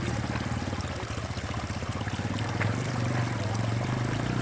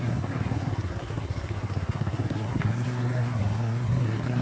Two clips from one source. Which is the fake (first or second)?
second